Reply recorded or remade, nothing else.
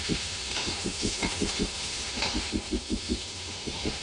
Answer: remade